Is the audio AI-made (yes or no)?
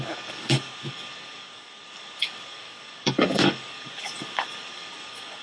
yes